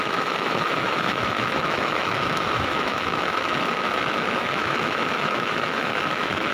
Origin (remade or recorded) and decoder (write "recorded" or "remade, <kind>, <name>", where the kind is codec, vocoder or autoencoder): remade, autoencoder, DAC-VAE